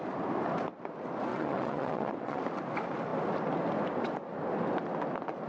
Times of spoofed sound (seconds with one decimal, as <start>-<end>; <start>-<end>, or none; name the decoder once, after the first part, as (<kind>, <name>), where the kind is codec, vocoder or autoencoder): 1.3-2.4 (vocoder, WaveNeXt)